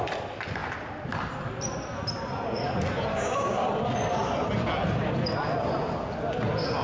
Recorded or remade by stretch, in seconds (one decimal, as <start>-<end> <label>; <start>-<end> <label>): 0.0-3.1 recorded; 3.1-3.7 remade; 3.7-6.8 recorded